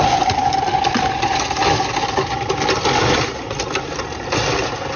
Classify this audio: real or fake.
real